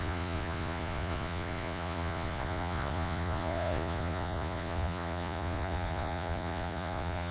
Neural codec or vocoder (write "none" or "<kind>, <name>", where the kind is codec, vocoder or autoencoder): vocoder, Vocos